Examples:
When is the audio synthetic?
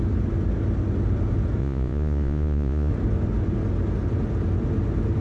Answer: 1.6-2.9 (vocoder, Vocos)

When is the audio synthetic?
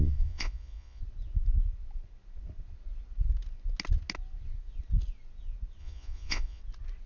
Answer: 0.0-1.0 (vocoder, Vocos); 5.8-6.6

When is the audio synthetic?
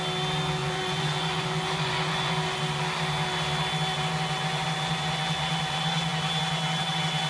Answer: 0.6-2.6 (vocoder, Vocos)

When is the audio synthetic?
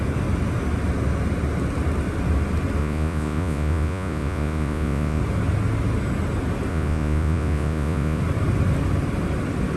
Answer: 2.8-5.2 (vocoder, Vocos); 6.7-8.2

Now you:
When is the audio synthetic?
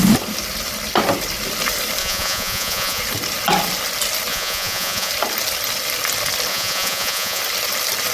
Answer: 2.0-3.0 (vocoder, Vocos); 4.3-5.1; 6.5-7.4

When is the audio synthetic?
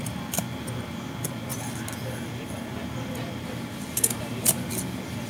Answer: none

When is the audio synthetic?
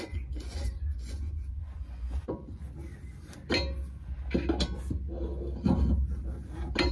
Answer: 0.0-2.6 (vocoder, Vocos)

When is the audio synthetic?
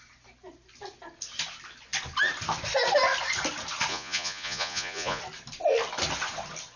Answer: 3.9-5.2 (vocoder, Vocos)